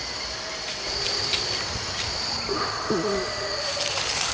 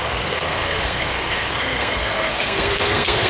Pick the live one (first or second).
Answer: first